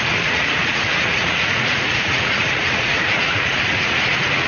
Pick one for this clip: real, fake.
fake